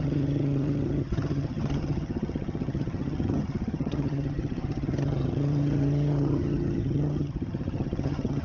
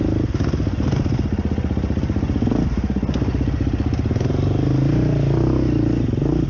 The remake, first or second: first